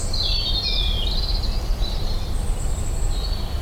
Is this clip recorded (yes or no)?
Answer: yes